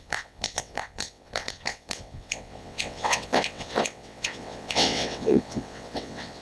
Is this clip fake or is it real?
fake